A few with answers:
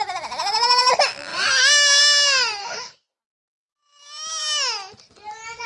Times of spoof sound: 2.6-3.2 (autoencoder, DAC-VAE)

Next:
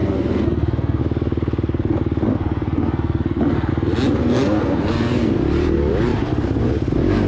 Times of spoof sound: 0.0-1.0 (codec, SNAC); 2.3-3.7; 4.2-5.3

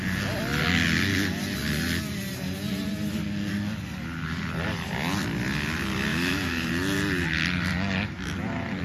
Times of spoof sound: 6.1-6.7 (autoencoder, DAC-VAE)

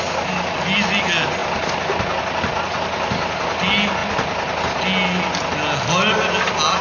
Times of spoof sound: none

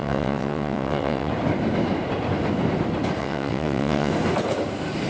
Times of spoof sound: 0.0-1.3 (vocoder, WaveNeXt); 3.2-4.1